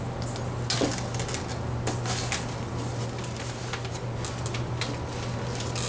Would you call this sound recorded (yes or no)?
yes